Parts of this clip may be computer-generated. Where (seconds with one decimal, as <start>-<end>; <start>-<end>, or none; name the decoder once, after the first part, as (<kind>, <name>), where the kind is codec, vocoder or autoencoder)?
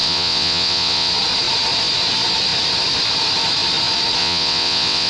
0.0-1.1 (vocoder, WaveNeXt); 4.2-5.1